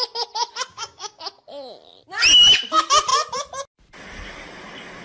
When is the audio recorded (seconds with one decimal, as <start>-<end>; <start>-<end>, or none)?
0.0-0.7; 1.2-5.0